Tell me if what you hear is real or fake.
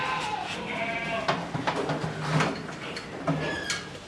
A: fake